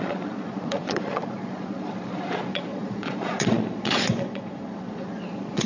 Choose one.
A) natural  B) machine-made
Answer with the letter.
B